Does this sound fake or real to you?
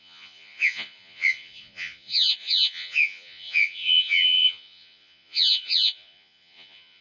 fake